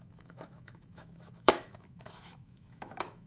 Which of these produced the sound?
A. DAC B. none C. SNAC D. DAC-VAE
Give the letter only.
D